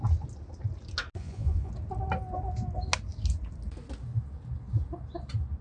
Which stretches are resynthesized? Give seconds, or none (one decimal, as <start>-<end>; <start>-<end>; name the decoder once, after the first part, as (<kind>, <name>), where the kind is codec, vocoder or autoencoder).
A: 1.2-1.7 (vocoder, Vocos)